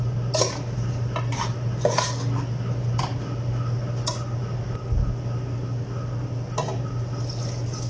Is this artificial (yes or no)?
no